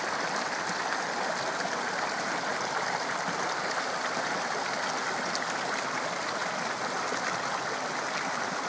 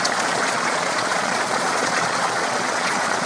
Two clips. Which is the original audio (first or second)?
first